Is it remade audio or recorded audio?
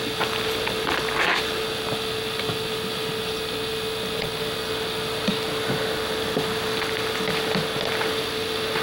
recorded